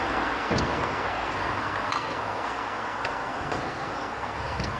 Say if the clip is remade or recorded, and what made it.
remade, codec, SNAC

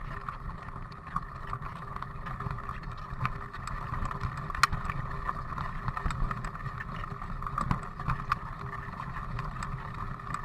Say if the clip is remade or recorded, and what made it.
recorded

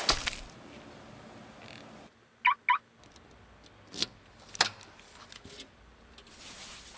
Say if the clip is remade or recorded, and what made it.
recorded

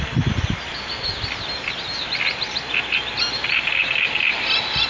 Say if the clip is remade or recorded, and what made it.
recorded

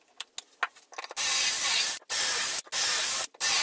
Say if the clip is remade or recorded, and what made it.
recorded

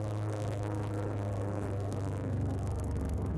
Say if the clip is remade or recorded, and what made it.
remade, codec, SNAC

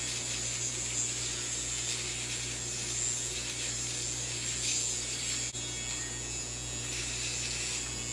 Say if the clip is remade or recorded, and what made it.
recorded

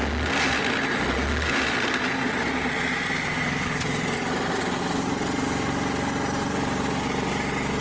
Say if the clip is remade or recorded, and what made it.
recorded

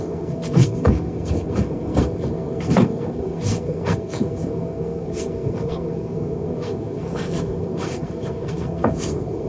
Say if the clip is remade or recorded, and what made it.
remade, codec, SNAC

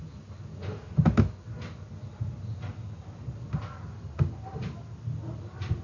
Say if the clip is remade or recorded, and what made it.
recorded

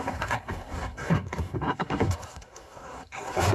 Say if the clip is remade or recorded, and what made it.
remade, codec, SNAC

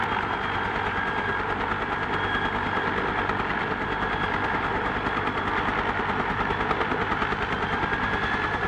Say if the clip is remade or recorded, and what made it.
recorded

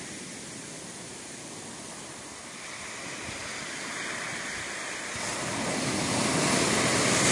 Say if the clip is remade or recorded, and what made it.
recorded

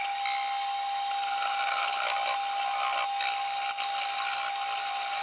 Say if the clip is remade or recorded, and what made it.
recorded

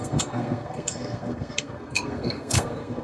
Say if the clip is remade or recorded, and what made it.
remade, codec, SNAC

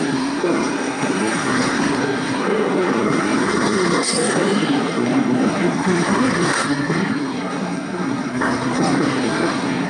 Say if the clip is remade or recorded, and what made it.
remade, codec, SNAC